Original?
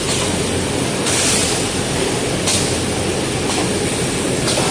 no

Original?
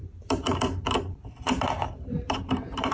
no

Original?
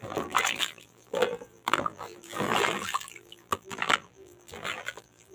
no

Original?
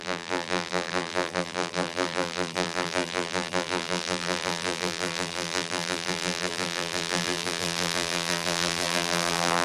no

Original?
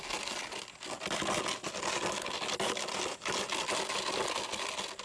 yes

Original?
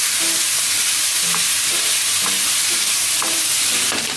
no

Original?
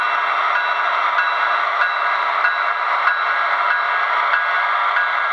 yes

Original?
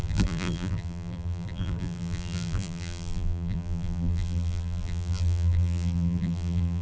no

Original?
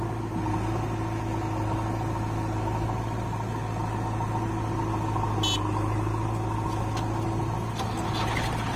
yes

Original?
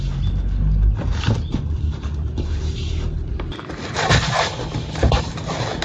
yes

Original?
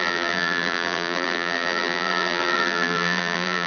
no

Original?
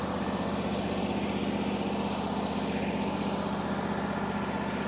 yes